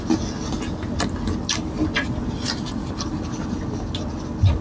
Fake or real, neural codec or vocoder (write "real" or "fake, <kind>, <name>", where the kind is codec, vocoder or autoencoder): fake, vocoder, BigVGAN v2